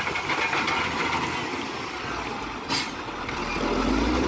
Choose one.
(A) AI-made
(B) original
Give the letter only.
B